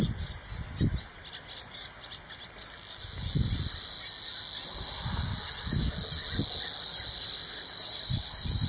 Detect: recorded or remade recorded